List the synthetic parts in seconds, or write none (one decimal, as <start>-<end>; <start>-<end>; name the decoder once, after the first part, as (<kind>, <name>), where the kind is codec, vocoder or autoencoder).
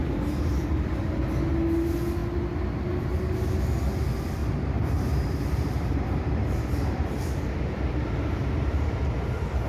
0.0-1.0 (vocoder, BigVGAN v2); 4.4-9.7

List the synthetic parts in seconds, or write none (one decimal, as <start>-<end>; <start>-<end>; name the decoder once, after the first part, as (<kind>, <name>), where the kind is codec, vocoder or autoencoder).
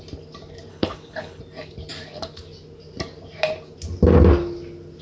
0.7-1.4 (codec, HILCodec)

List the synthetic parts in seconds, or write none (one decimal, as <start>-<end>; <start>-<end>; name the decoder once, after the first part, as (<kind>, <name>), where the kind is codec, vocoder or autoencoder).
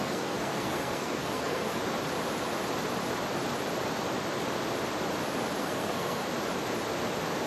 0.0-1.8 (codec, SNAC); 5.6-6.2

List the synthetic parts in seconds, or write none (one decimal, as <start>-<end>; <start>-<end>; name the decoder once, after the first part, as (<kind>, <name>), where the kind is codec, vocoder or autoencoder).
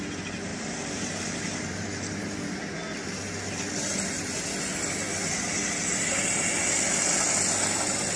0.5-2.6 (vocoder, BigVGAN v2); 5.6-6.6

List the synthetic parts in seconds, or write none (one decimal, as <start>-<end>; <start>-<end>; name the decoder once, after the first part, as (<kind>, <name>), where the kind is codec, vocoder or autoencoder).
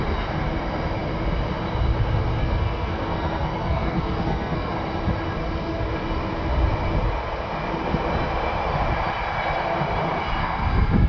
2.4-4.7 (codec, SNAC); 10.4-11.1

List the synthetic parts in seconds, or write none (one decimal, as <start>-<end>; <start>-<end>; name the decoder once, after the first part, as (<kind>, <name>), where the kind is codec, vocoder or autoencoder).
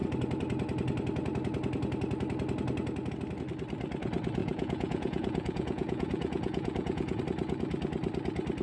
4.4-7.2 (vocoder, Vocos)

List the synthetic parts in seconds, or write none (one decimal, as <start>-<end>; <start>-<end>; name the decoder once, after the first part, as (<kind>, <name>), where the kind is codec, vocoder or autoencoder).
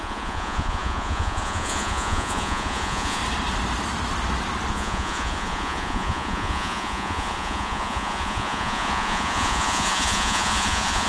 0.0-3.2 (vocoder, Vocos); 4.7-11.1